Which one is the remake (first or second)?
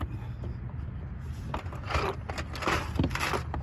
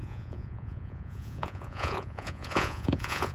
second